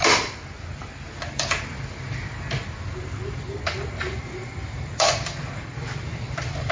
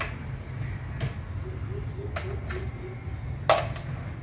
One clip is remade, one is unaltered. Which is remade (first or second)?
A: first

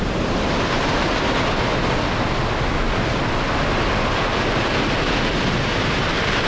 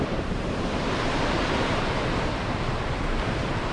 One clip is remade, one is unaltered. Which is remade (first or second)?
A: second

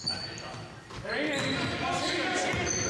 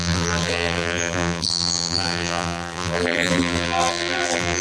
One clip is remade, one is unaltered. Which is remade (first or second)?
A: second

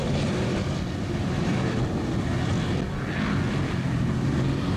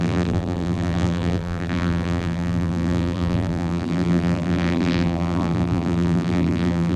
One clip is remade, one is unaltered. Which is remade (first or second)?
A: second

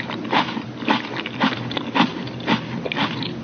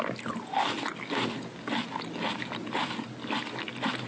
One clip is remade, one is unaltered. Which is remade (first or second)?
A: first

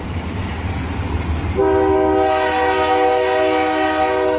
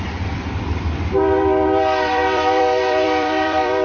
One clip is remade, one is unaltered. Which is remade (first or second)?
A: second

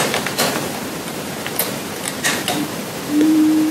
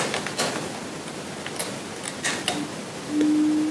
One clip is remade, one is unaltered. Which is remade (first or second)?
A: first